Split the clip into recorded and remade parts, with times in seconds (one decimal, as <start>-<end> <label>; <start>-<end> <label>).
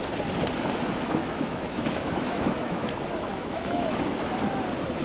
0.0-1.2 recorded; 1.2-4.2 remade; 4.2-5.0 recorded